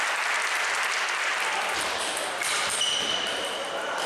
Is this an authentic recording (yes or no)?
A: yes